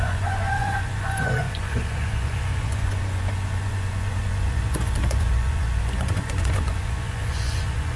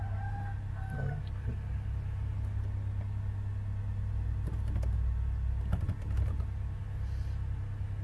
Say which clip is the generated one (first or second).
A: first